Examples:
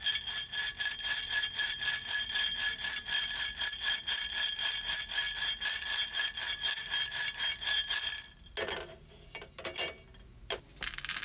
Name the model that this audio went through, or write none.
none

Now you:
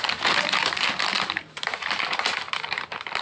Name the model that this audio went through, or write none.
vocoder, BigVGAN v2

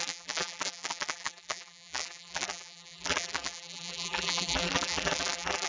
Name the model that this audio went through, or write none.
vocoder, BigVGAN v2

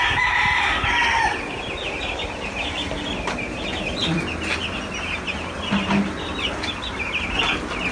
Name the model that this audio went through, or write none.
none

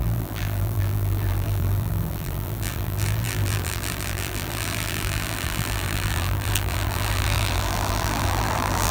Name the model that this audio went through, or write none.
vocoder, BigVGAN v2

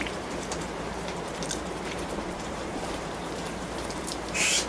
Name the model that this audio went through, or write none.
vocoder, BigVGAN v2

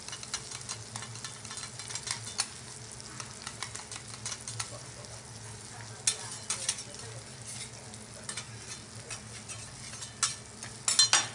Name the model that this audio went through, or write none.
none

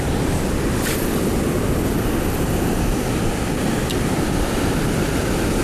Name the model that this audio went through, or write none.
none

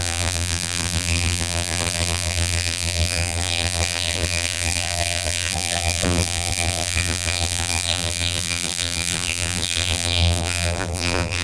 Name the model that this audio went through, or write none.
vocoder, BigVGAN v2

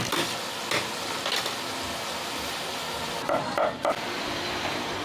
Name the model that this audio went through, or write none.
none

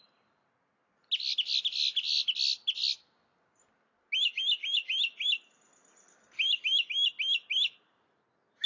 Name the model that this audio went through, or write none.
none